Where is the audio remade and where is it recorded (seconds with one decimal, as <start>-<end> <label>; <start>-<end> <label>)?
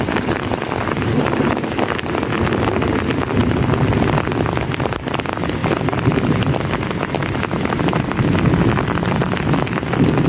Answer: 0.0-5.6 remade; 5.6-8.7 recorded; 8.7-10.3 remade